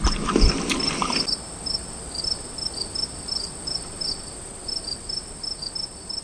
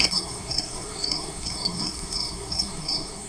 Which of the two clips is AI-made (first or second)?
second